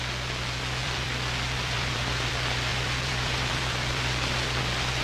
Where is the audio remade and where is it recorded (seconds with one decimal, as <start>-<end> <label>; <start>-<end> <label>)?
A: 0.0-0.8 recorded; 0.8-2.3 remade; 2.3-2.7 recorded; 2.7-4.6 remade; 4.6-5.0 recorded